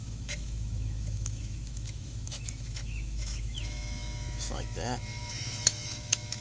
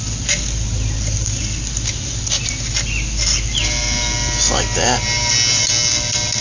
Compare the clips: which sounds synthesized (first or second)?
first